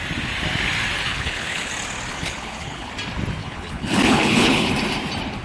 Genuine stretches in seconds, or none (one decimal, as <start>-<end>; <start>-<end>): 0.0-1.1; 1.7-2.1; 2.9-3.4; 4.7-5.4